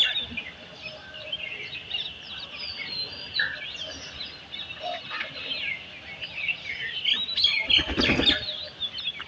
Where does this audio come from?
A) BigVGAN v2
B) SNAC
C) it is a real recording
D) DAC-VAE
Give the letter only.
C